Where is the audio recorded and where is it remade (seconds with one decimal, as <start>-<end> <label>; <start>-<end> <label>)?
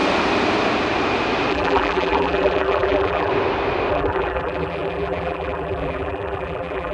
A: 0.0-1.5 recorded; 1.5-3.3 remade; 3.3-3.9 recorded; 3.9-6.9 remade